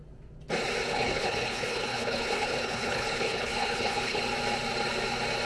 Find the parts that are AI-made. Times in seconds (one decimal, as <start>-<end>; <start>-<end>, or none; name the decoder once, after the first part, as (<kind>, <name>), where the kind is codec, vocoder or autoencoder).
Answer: 0.9-4.2 (codec, HILCodec)